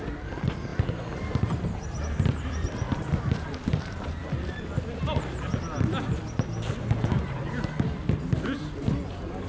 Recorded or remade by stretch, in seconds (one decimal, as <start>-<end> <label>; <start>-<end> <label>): 0.0-0.7 remade; 0.7-2.0 recorded; 2.0-4.2 remade; 4.2-9.5 recorded